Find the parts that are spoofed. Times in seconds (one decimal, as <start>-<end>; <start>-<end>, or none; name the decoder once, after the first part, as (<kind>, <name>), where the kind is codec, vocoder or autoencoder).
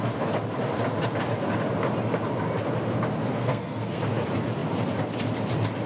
3.3-4.0 (codec, SNAC)